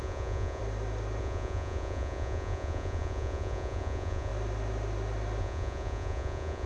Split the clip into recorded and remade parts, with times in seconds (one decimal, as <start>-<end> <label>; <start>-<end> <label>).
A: 0.0-0.6 remade; 0.6-1.2 recorded; 1.2-4.3 remade; 4.3-5.4 recorded; 5.4-6.7 remade

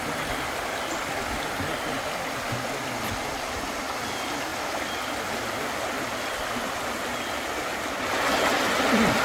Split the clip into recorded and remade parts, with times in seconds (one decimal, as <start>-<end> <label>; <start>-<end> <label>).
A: 0.0-9.2 recorded

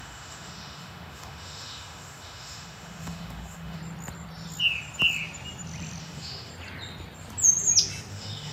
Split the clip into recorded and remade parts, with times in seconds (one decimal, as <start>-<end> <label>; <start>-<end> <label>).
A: 0.0-3.8 remade; 3.8-6.0 recorded; 6.0-6.5 remade; 6.5-8.1 recorded; 8.1-8.5 remade

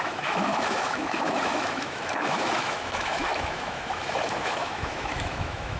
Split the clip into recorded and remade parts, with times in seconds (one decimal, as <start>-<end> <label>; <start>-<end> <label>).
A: 0.0-5.8 remade

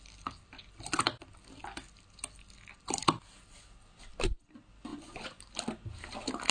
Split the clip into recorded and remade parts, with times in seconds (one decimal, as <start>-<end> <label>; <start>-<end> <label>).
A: 0.0-4.9 recorded; 4.9-5.4 remade; 5.4-6.5 recorded